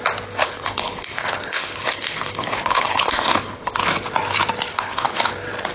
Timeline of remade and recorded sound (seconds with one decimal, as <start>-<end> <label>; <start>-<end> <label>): 0.0-0.4 recorded; 0.4-3.8 remade; 3.8-4.7 recorded; 4.7-5.3 remade; 5.3-5.7 recorded